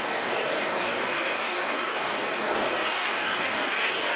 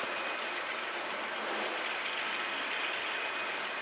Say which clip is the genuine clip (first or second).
second